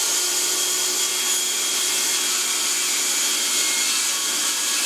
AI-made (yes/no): no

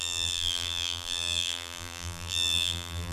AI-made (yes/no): yes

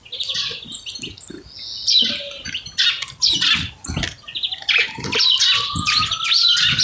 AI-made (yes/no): no